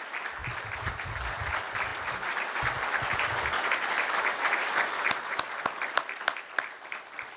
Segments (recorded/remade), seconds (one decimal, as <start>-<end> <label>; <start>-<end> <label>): 0.0-7.4 recorded